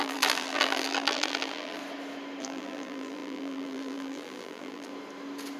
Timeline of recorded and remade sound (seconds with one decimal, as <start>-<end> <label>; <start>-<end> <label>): 0.0-1.8 remade; 1.8-2.4 recorded; 2.4-4.9 remade; 4.9-5.6 recorded